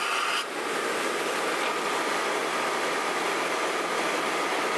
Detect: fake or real real